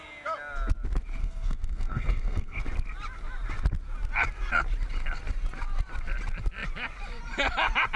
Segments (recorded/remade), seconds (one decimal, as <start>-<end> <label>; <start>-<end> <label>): 0.0-1.2 recorded; 1.2-2.6 remade; 2.6-8.0 recorded